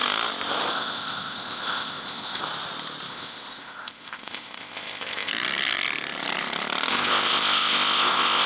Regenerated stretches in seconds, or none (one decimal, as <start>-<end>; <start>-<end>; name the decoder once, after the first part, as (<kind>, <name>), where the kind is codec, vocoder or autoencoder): 0.7-2.4 (codec, ZipCodec); 3.1-5.3; 6.9-8.5